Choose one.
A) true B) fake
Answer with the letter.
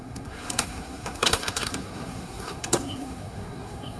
B